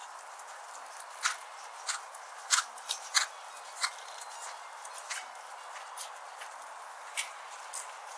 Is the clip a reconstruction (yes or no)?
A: no